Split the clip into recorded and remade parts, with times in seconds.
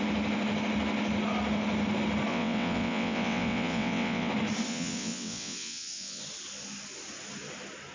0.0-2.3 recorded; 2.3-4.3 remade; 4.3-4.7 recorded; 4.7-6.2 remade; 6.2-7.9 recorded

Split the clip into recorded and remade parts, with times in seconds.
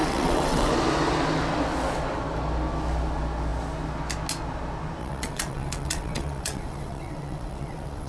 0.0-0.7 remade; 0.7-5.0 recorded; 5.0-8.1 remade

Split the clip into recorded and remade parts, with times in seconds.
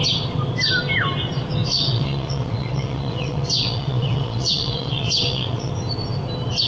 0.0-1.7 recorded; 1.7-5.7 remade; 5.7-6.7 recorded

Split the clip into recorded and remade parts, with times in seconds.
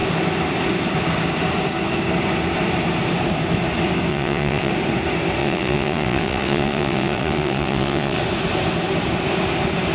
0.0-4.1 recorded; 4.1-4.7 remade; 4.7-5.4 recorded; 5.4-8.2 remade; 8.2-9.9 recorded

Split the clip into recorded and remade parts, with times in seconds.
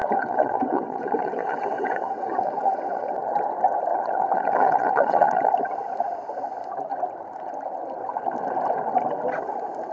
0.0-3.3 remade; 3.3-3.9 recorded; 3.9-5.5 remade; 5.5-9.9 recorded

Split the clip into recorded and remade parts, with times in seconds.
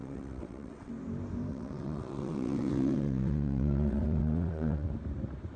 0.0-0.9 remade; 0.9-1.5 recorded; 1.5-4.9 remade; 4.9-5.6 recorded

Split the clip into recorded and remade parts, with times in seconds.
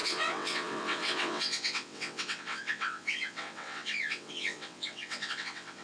0.0-5.8 remade